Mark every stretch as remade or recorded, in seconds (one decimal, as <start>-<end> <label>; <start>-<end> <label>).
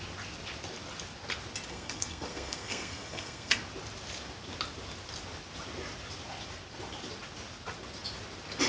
0.0-1.7 recorded; 1.7-3.6 remade; 3.6-8.7 recorded